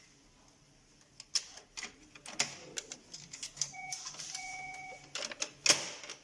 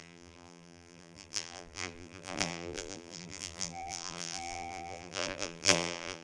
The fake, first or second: second